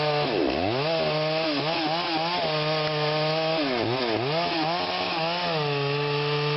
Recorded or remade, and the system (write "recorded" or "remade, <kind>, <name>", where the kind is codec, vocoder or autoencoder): recorded